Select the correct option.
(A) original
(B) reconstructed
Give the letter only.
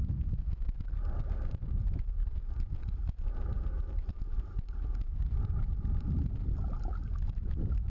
B